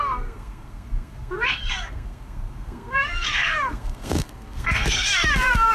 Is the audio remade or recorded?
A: remade